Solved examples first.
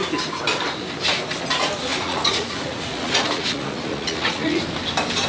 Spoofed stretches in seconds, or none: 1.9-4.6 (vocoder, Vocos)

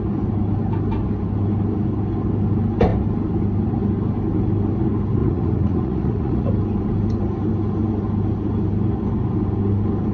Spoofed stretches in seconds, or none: 5.2-6.5 (vocoder, Vocos)

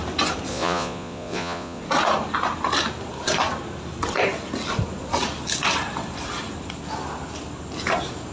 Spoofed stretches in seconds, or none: 0.5-1.8 (vocoder, Vocos)

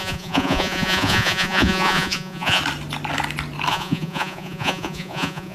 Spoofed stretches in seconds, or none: 0.0-2.6 (vocoder, Vocos); 3.7-5.5

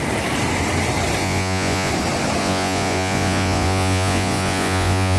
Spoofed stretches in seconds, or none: 1.2-1.9 (vocoder, Vocos); 2.4-5.2

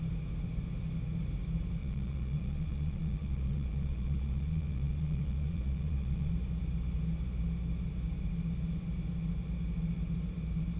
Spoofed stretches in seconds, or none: 1.8-6.3 (vocoder, Vocos)

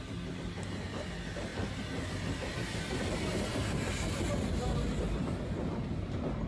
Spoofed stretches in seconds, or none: none